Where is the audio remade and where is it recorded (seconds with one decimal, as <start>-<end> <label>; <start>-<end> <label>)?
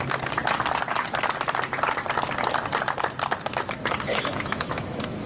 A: 0.0-4.1 recorded; 4.1-5.3 remade